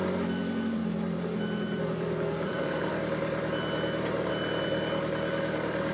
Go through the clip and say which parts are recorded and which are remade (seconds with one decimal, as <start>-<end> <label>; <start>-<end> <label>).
0.0-5.9 remade